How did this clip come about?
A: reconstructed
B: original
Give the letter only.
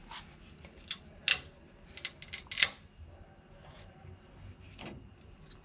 B